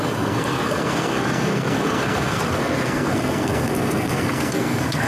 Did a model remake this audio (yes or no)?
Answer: yes